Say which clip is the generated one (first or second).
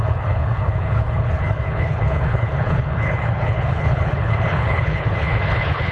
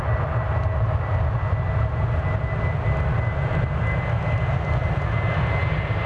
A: first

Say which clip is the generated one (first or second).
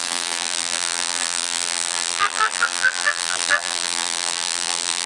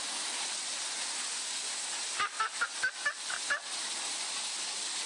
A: first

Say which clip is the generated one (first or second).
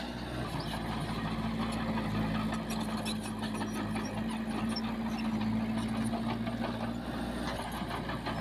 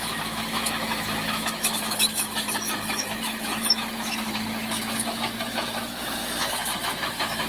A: second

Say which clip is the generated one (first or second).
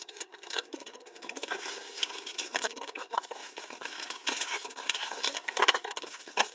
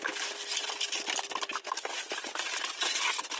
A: first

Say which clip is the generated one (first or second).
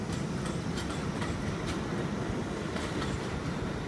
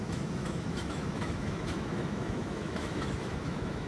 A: second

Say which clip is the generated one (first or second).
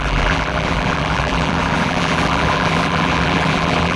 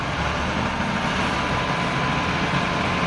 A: first